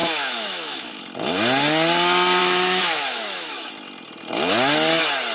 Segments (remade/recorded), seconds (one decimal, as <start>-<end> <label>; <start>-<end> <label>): 0.0-1.0 remade; 1.0-2.4 recorded; 2.4-3.7 remade; 3.7-5.3 recorded